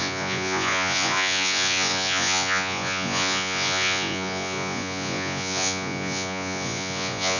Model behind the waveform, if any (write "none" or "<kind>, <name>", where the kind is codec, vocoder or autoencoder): vocoder, Vocos